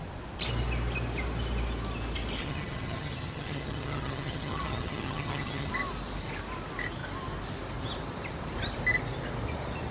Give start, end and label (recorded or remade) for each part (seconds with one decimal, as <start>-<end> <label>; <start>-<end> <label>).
0.0-2.4 recorded; 2.4-5.7 remade; 5.7-9.9 recorded